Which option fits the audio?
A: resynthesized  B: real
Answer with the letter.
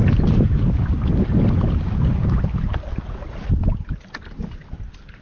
B